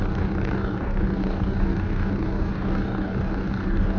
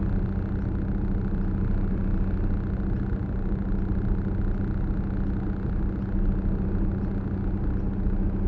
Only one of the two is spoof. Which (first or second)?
first